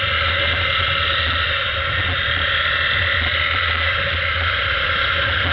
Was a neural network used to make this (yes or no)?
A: no